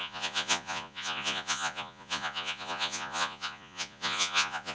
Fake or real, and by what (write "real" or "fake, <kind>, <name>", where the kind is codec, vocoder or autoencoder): fake, vocoder, Vocos